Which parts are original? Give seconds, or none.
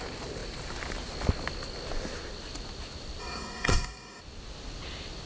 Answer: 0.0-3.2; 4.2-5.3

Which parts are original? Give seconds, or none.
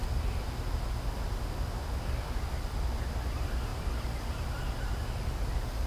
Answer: 0.0-5.9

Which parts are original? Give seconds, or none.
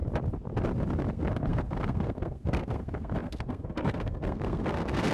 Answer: 0.0-1.1